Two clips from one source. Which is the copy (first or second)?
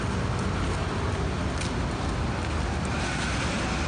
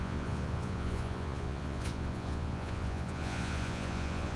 second